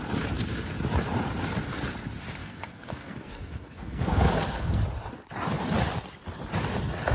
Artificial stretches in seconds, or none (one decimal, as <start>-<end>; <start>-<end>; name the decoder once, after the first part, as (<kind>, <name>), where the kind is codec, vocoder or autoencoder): 2.4-4.8 (codec, SNAC)